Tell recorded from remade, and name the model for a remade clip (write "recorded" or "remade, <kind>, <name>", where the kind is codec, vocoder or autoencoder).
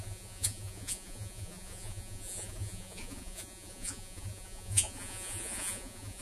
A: remade, vocoder, Vocos